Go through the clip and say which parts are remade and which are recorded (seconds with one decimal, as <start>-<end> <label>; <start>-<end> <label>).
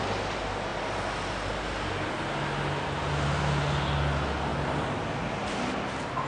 0.0-6.3 recorded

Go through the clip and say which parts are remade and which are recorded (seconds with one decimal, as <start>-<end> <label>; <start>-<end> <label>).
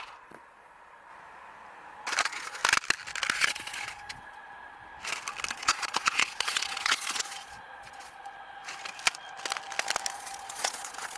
0.0-1.1 remade; 1.1-2.2 recorded; 2.2-2.6 remade; 2.6-3.3 recorded; 3.3-4.9 remade; 4.9-5.5 recorded; 5.5-8.6 remade; 8.6-10.1 recorded; 10.1-11.2 remade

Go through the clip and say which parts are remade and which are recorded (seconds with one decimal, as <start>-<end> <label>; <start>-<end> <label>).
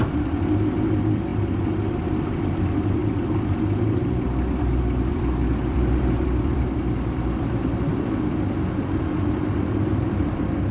0.0-1.3 remade; 1.3-2.5 recorded; 2.5-10.7 remade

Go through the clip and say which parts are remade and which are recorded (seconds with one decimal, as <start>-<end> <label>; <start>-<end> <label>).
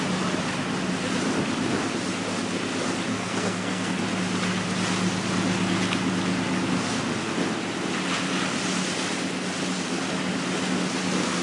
0.0-3.1 recorded; 3.1-4.0 remade; 4.0-11.4 recorded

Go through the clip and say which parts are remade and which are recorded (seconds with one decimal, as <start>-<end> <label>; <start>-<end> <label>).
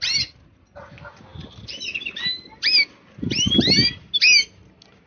0.0-5.1 recorded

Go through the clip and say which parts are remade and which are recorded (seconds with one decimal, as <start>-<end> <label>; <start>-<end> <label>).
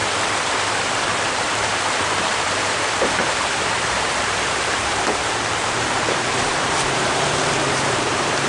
0.0-0.7 recorded; 0.7-8.5 remade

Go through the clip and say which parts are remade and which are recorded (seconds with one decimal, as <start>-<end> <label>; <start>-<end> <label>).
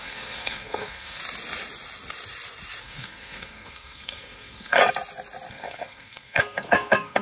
0.0-1.2 remade; 1.2-2.8 recorded; 2.8-4.8 remade; 4.8-5.5 recorded; 5.5-7.2 remade